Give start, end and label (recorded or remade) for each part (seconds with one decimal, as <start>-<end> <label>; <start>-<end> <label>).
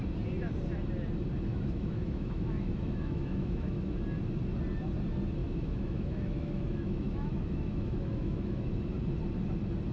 0.0-1.5 recorded; 1.5-4.0 remade; 4.0-5.4 recorded; 5.4-8.7 remade; 8.7-9.9 recorded